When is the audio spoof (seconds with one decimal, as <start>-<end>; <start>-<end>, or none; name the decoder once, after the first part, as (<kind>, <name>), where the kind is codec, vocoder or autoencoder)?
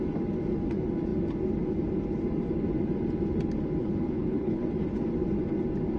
3.8-4.6 (codec, HILCodec)